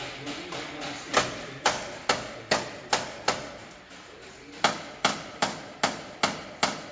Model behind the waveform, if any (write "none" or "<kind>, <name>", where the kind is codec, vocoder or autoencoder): none